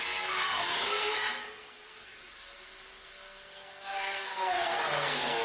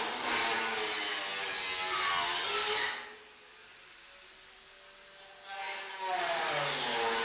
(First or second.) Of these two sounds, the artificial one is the first